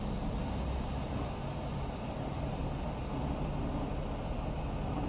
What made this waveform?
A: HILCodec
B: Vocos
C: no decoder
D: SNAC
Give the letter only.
C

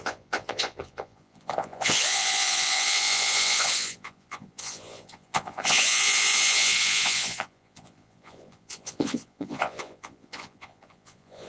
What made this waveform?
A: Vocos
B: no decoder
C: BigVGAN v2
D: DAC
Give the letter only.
A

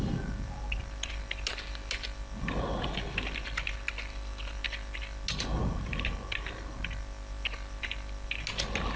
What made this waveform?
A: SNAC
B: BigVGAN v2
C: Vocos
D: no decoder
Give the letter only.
D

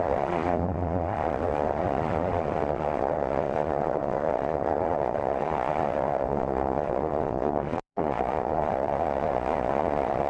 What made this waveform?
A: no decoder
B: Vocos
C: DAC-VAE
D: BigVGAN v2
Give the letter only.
B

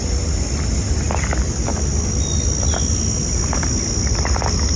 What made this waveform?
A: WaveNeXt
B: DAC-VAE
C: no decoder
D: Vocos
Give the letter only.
C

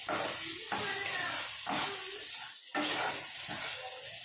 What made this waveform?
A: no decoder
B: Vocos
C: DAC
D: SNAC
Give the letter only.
A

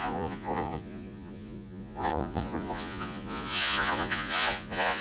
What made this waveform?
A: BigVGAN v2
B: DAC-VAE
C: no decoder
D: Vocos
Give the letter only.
D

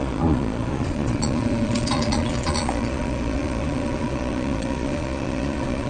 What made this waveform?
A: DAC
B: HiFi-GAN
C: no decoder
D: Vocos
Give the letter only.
D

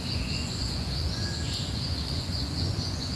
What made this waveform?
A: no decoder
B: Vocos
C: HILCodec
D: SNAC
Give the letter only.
B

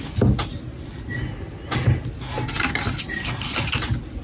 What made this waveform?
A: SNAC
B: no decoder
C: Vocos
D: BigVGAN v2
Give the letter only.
B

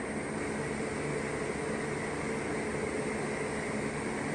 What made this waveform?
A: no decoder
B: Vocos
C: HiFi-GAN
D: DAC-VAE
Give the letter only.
A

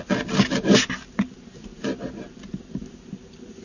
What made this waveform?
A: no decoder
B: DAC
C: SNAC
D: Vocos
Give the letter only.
A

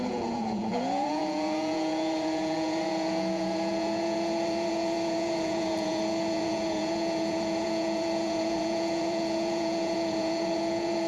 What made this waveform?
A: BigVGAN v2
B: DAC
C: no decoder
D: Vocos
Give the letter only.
D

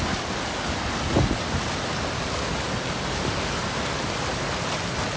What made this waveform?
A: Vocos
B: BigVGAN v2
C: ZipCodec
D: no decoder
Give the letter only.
D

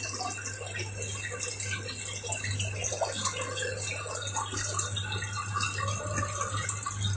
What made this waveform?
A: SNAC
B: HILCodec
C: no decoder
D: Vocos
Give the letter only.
C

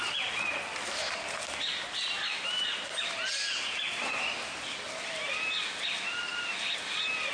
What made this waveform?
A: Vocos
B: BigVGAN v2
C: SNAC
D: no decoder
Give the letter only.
D